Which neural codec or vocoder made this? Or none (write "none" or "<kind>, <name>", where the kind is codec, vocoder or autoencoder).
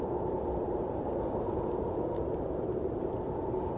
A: none